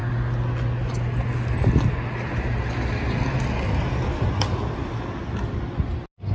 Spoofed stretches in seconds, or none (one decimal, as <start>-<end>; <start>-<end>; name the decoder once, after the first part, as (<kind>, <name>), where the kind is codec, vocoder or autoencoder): none